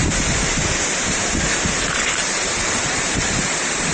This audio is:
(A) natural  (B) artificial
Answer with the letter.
B